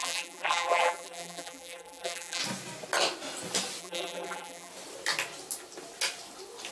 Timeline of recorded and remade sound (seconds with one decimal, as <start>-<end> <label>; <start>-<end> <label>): 0.0-2.4 remade; 2.4-3.8 recorded; 3.8-4.7 remade; 4.7-6.7 recorded